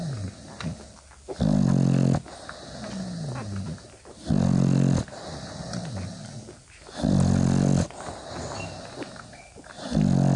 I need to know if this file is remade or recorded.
recorded